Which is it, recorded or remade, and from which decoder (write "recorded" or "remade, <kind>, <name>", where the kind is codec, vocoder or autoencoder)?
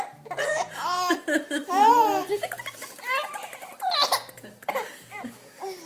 remade, vocoder, BigVGAN v2